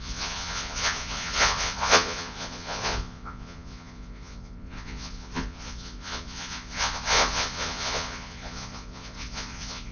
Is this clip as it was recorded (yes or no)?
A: no